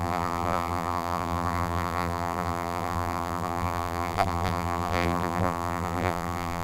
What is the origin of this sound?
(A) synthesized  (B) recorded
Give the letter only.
A